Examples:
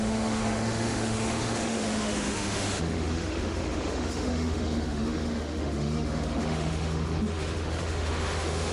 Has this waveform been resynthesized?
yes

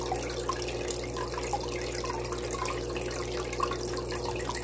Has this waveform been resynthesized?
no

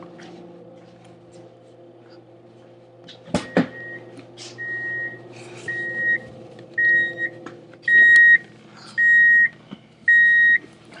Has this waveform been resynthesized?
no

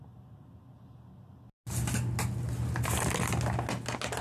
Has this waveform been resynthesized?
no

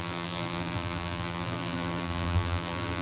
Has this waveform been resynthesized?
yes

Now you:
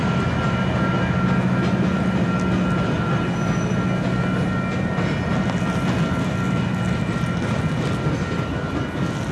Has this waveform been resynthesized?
no